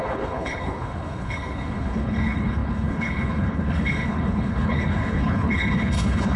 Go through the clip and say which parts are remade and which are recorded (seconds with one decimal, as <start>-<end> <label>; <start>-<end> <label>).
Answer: 0.0-6.4 remade